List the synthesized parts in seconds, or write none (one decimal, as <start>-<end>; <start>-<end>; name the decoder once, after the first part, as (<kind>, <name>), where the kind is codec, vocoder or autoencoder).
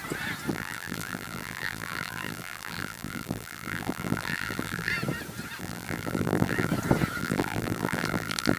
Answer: 0.5-4.9 (vocoder, BigVGAN v2); 5.6-6.7; 7.2-8.6